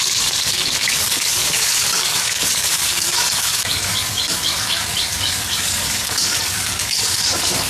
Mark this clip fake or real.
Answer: fake